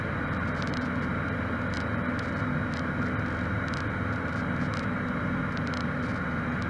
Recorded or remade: recorded